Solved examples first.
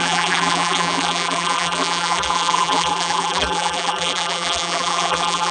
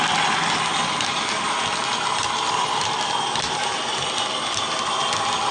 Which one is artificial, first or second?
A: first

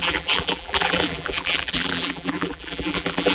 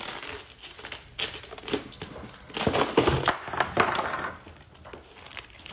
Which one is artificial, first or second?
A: first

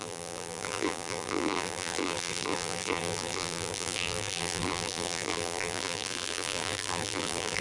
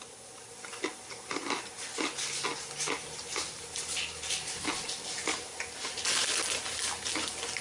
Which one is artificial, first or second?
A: first